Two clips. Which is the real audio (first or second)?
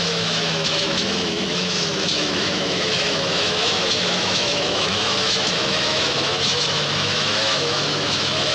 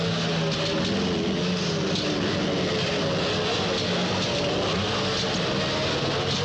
second